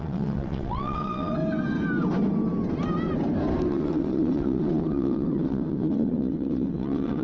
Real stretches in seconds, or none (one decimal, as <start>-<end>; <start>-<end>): 1.4-3.7